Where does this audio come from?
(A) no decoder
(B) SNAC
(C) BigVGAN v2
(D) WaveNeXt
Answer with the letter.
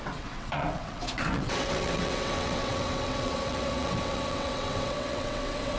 D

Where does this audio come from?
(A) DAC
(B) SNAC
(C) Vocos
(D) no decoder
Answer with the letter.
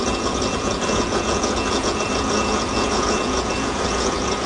C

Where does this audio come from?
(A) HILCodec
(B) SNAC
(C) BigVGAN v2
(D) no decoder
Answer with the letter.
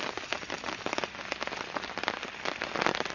D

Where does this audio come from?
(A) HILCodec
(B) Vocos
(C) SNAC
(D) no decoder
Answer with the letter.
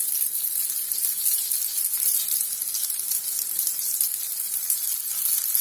D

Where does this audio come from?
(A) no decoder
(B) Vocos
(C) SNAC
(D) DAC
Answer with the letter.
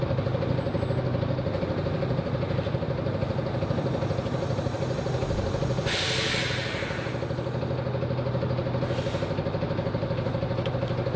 A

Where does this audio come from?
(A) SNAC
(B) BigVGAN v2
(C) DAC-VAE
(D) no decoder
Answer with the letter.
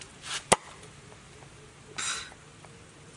D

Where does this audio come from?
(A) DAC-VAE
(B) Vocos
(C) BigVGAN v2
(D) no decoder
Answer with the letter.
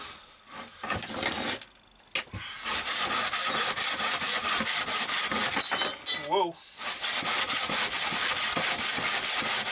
D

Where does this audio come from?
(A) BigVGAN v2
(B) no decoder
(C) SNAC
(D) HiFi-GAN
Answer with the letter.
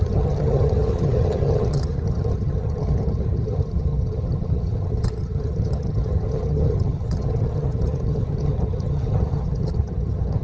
D